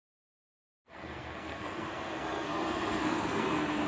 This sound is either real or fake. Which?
fake